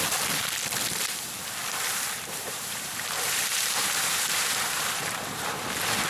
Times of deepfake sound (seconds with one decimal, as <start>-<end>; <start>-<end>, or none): 1.9-5.6